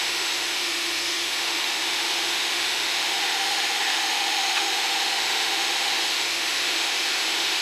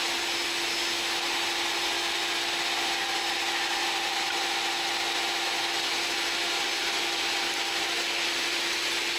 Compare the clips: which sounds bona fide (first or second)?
second